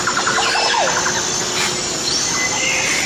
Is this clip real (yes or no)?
yes